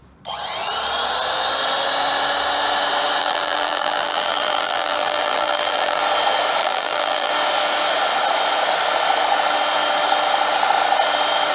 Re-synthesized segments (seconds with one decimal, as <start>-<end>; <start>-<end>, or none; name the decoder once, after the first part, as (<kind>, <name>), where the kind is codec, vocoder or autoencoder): 3.2-6.0 (vocoder, BigVGAN v2); 6.6-7.3